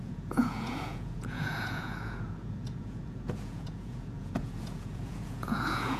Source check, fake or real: fake